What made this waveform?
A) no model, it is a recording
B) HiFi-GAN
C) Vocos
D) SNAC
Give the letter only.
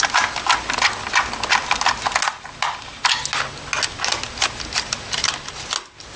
A